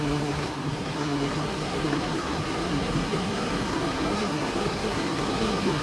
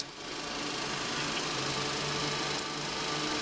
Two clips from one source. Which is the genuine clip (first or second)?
second